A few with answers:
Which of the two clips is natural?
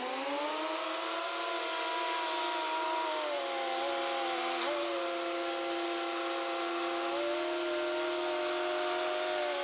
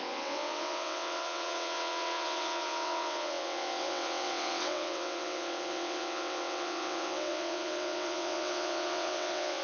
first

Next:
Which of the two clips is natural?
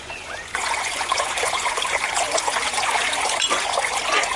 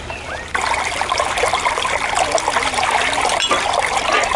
second